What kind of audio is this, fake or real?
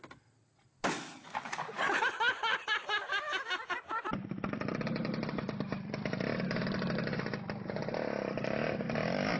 real